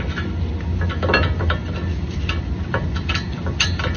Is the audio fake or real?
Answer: real